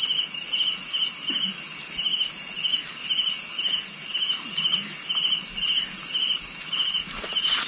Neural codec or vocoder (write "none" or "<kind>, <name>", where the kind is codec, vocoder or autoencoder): none